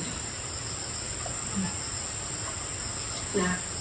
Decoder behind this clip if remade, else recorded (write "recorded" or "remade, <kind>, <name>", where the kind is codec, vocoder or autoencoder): recorded